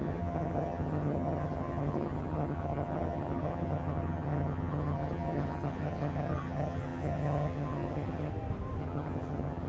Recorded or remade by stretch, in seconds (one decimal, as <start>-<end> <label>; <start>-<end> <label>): 0.0-8.3 remade; 8.3-8.8 recorded; 8.8-9.7 remade